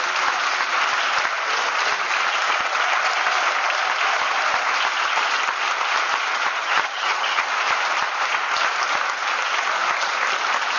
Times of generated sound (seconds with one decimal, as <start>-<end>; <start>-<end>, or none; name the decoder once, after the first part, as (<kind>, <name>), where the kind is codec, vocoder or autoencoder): 6.6-7.4 (vocoder, HiFi-GAN)